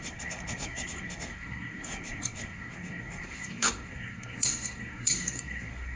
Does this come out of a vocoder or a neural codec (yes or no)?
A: yes